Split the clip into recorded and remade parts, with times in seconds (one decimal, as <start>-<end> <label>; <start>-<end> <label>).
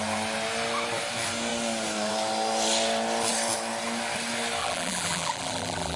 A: 0.0-4.6 recorded; 4.6-6.0 remade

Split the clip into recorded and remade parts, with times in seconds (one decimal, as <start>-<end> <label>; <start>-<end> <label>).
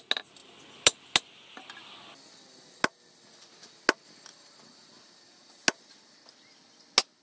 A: 0.0-7.2 recorded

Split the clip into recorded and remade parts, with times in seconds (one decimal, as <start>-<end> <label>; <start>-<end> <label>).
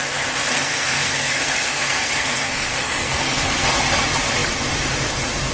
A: 0.0-0.5 recorded; 0.5-3.8 remade; 3.8-5.5 recorded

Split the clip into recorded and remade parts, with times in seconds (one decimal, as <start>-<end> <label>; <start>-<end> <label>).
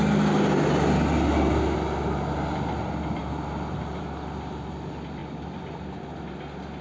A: 0.0-6.8 recorded